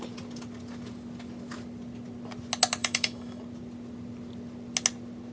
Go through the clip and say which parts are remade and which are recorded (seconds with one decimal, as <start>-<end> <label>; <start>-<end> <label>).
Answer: 0.0-2.8 recorded; 2.8-3.4 remade; 3.4-5.3 recorded